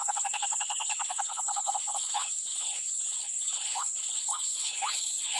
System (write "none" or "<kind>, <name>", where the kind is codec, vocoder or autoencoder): codec, HILCodec